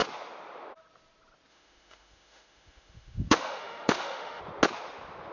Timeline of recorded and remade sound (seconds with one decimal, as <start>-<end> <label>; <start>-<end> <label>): 0.0-1.5 recorded; 1.5-4.4 remade; 4.4-5.3 recorded